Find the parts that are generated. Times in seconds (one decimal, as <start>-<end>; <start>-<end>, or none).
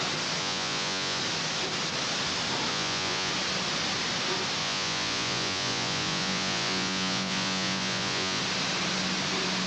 0.4-1.2; 2.7-3.3; 4.6-8.4